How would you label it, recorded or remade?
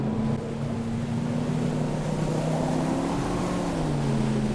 recorded